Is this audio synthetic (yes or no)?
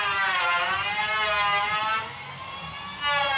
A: no